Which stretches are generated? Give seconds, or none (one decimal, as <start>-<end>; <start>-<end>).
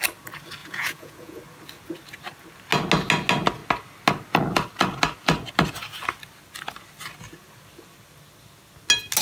0.6-1.4